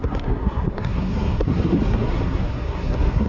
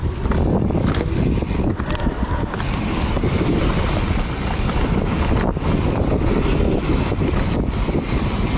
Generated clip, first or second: first